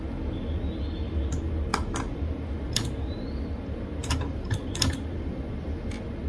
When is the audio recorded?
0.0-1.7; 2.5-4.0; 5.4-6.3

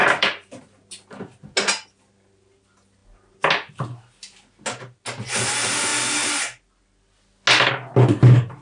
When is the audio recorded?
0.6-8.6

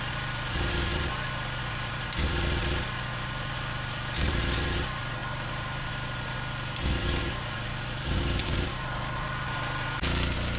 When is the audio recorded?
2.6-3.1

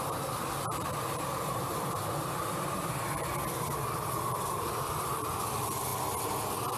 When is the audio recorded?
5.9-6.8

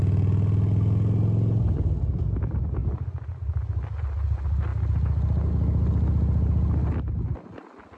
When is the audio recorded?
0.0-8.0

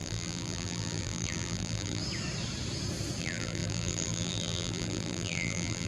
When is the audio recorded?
2.0-3.2